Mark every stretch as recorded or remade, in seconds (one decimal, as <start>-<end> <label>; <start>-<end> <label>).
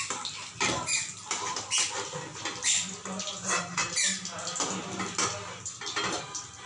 0.0-6.7 recorded